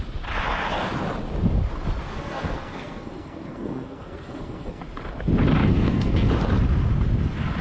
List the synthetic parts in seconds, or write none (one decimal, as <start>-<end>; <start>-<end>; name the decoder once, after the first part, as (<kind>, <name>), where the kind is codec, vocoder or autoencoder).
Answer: 2.0-4.8 (codec, SNAC); 5.6-6.3